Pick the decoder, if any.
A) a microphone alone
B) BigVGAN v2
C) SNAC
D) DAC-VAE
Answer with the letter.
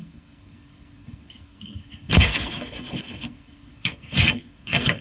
C